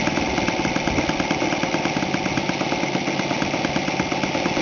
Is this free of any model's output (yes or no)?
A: yes